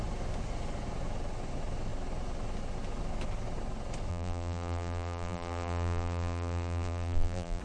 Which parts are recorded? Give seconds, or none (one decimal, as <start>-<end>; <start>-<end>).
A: 0.0-4.1